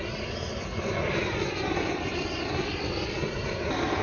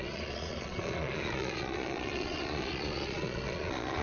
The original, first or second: first